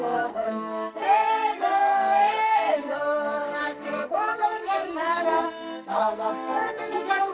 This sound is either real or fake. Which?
fake